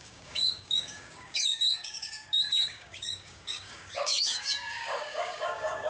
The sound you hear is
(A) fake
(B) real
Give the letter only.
A